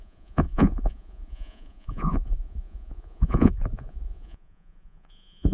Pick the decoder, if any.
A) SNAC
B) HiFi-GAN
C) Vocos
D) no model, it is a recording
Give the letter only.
C